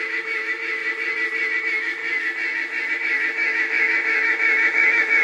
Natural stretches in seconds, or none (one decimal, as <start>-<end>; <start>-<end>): 0.8-1.6; 2.0-2.9

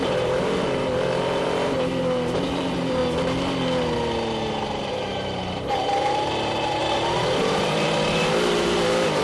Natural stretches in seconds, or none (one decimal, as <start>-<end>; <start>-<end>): 3.0-4.9; 6.8-7.4

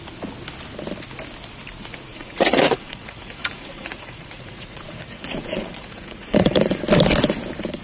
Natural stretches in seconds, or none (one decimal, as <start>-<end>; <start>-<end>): 0.0-2.1; 6.8-7.8

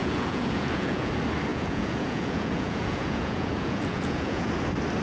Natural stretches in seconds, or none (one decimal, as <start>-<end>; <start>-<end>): 1.1-1.5; 4.5-5.0

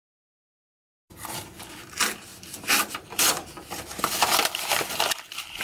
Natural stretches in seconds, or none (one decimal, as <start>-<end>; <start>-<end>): none

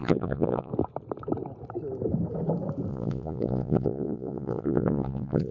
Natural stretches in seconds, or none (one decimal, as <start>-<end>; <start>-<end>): 0.7-2.9